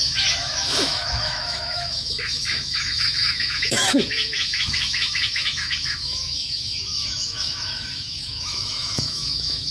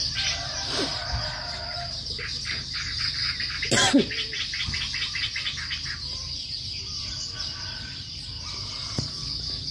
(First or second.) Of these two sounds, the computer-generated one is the first